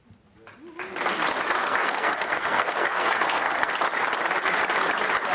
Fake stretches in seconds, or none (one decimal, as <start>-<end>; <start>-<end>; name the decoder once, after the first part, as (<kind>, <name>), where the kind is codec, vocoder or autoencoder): 1.6-3.7 (codec, SNAC)